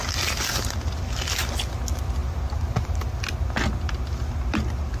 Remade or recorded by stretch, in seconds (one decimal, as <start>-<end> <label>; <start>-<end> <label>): 0.0-2.2 recorded; 2.2-3.2 remade; 3.2-5.0 recorded